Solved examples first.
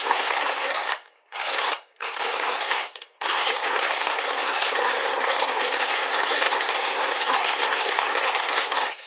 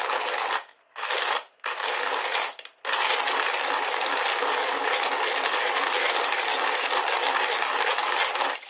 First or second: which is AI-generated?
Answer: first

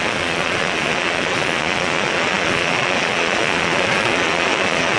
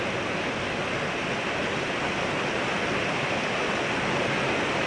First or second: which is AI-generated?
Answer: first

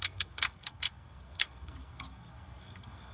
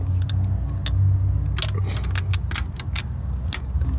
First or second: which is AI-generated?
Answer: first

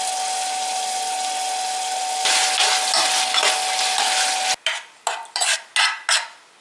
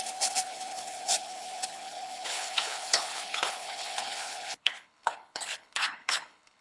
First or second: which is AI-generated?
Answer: second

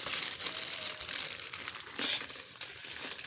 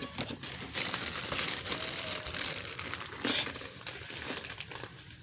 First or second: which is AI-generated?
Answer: first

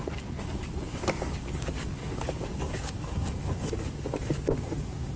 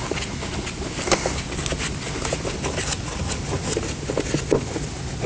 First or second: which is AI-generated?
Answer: first